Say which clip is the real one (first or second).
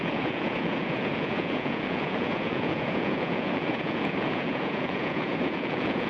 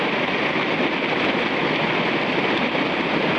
second